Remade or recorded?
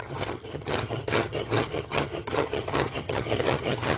remade